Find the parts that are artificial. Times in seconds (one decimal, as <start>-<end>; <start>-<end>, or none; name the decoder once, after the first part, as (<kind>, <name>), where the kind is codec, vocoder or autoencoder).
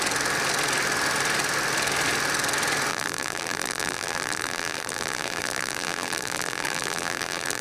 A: 2.9-7.6 (vocoder, BigVGAN v2)